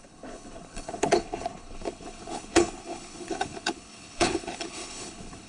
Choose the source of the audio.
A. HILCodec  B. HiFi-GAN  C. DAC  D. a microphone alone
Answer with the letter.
A